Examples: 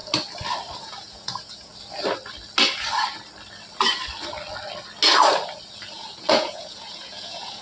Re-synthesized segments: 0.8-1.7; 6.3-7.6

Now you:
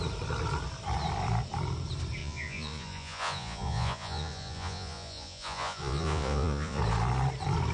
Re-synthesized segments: 2.2-6.8

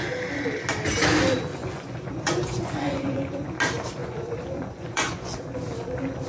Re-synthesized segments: 1.5-3.5; 4.0-5.4

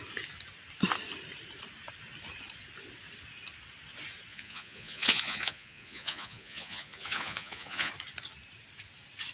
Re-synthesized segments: 4.3-7.9

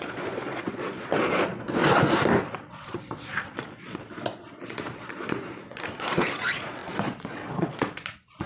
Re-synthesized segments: 0.0-1.8; 2.4-8.5